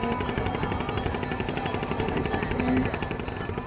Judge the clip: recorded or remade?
recorded